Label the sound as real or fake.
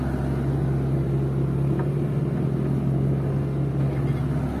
real